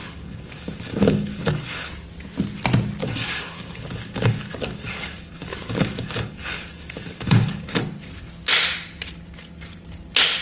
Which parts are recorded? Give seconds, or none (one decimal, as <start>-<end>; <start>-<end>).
1.9-3.0; 7.8-10.4